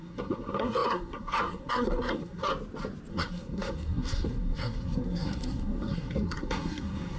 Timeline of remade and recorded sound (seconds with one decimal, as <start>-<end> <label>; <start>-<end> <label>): 0.0-2.5 remade; 2.5-3.1 recorded; 3.1-7.2 remade